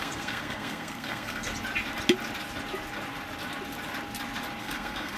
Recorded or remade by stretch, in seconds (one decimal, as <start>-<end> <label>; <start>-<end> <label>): 0.0-1.5 remade; 1.5-4.6 recorded; 4.6-5.2 remade